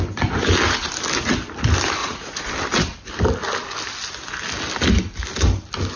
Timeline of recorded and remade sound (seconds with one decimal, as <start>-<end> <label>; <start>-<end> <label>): 0.0-2.0 recorded; 2.0-2.5 remade; 2.5-6.0 recorded

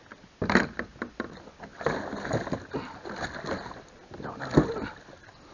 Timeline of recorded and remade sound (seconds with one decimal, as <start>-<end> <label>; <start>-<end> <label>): 0.0-5.5 recorded

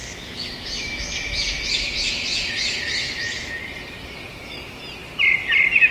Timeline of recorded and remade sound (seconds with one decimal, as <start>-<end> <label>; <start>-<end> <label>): 0.0-3.5 remade; 3.5-4.3 recorded; 4.3-4.8 remade; 4.8-5.9 recorded

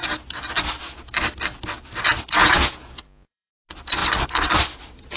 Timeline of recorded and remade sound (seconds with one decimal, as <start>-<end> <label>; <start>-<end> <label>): 0.0-2.4 recorded; 2.4-3.5 remade; 3.5-5.2 recorded